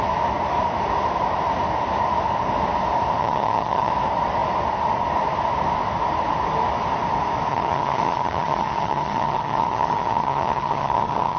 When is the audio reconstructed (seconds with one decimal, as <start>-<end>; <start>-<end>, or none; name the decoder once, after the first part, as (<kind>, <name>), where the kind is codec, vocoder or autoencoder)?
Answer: 3.2-3.9 (vocoder, HiFi-GAN); 7.5-11.4